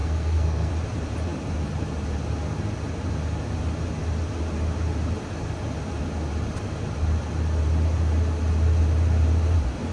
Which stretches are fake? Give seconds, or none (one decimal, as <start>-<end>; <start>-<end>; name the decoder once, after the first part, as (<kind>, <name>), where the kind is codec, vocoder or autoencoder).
0.0-0.7 (codec, SNAC)

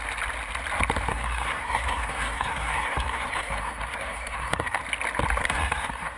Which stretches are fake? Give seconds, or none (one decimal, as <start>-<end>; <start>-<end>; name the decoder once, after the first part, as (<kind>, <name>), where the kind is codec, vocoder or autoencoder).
1.1-4.8 (codec, SNAC); 5.4-6.2

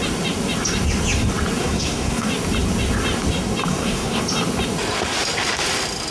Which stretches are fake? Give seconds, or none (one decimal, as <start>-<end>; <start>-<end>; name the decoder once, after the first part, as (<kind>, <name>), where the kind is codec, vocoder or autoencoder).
1.6-2.3 (codec, SNAC); 3.7-4.2

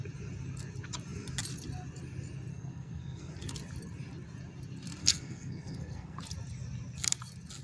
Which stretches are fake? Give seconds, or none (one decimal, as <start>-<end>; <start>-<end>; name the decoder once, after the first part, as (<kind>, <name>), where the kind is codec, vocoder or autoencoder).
2.5-3.3 (codec, SNAC); 5.0-6.2

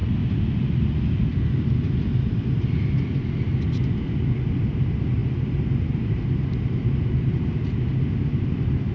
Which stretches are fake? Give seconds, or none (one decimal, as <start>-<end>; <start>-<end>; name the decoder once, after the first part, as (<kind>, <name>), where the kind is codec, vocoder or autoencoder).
none

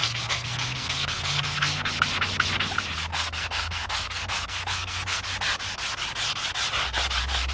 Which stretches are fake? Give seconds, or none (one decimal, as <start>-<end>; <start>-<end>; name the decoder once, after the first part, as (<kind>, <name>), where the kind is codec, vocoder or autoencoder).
0.0-1.9 (codec, SNAC); 3.1-5.2

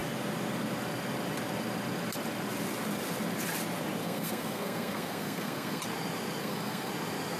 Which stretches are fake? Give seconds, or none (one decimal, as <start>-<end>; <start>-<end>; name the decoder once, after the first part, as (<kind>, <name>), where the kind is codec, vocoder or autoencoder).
4.0-5.8 (codec, SNAC); 6.4-6.9